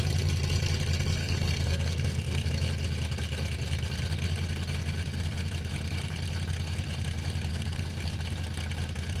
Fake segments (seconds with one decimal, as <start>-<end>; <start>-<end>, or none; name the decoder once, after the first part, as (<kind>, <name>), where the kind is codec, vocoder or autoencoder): 1.2-2.5 (codec, SNAC); 7.5-8.1